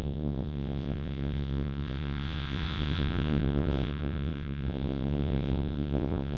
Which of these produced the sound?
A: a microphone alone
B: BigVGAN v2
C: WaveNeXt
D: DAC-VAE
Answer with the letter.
C